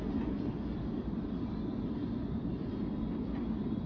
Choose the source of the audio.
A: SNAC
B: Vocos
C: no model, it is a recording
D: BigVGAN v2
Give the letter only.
C